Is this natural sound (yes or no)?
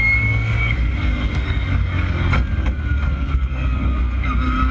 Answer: no